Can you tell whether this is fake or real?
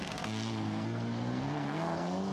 fake